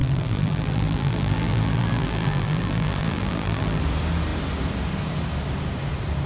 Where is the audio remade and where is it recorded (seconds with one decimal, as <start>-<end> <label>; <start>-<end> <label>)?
0.0-3.8 remade; 3.8-6.3 recorded